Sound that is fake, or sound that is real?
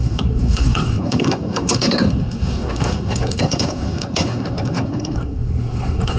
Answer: fake